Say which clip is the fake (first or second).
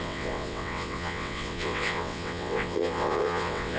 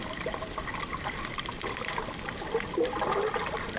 first